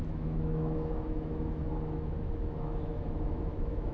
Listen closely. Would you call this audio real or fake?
fake